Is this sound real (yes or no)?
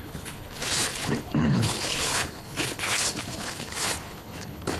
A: no